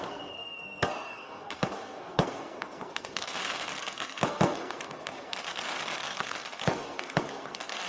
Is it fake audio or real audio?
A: fake